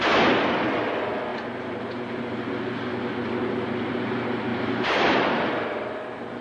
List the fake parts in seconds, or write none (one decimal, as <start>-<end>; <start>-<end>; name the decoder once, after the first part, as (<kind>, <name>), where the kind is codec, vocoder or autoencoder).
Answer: 1.3-2.2 (vocoder, BigVGAN v2); 4.5-5.5